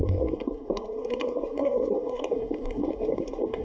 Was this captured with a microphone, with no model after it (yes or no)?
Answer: no